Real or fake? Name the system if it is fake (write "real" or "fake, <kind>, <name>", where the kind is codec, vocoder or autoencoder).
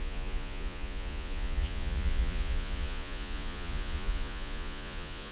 fake, vocoder, Vocos